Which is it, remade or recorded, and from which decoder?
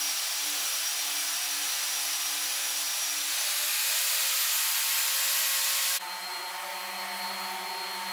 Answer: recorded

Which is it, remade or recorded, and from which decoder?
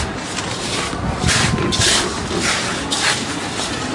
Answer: recorded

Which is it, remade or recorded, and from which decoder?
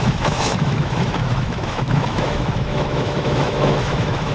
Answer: remade, autoencoder, DAC-VAE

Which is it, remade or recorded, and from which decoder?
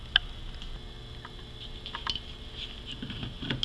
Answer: recorded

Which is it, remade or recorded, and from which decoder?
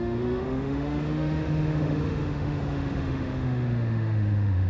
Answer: remade, autoencoder, DAC-VAE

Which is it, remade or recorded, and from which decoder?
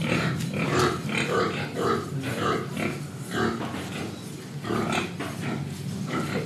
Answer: recorded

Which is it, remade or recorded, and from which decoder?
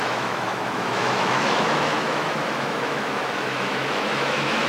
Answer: remade, autoencoder, DAC-VAE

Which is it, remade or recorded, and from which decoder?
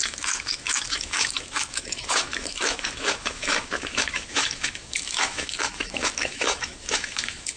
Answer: remade, autoencoder, DAC-VAE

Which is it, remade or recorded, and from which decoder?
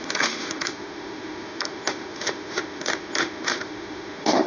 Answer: remade, autoencoder, DAC-VAE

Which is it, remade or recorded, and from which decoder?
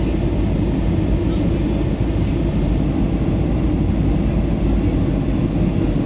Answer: recorded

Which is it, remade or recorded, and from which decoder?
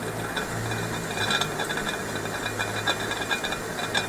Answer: recorded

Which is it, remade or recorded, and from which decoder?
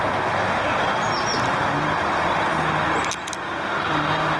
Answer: recorded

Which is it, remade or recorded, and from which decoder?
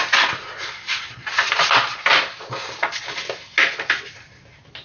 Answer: recorded